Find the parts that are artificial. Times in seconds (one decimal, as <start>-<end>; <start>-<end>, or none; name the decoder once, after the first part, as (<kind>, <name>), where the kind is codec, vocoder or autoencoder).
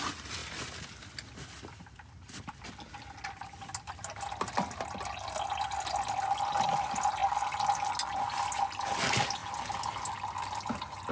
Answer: none